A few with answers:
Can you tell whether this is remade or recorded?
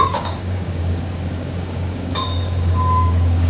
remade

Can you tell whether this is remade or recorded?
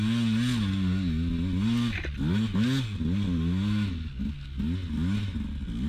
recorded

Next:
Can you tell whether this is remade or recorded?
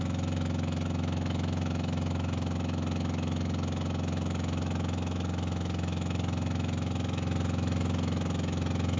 remade